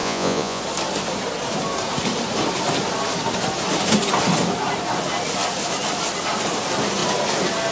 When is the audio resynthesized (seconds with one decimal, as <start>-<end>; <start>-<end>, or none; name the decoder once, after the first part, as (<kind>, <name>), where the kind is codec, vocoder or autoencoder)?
0.0-0.6 (vocoder, Vocos)